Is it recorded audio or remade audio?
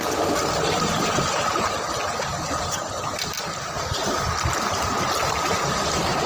recorded